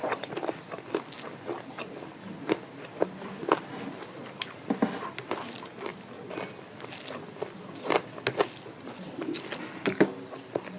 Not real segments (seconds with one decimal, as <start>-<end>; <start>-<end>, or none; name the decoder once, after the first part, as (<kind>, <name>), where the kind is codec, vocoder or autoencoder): none